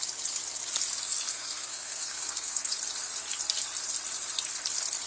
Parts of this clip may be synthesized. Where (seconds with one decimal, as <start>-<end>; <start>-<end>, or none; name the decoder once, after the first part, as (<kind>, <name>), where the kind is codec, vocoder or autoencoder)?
1.3-2.7 (codec, SNAC)